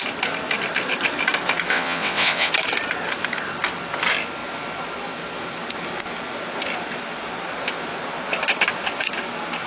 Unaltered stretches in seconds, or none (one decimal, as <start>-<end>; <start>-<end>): 0.0-1.7; 2.5-9.7